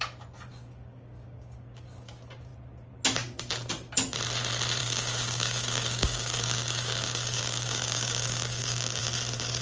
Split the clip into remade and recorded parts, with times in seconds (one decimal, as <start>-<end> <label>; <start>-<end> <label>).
0.0-0.5 recorded; 0.5-2.1 remade; 2.1-4.8 recorded; 4.8-9.0 remade; 9.0-9.6 recorded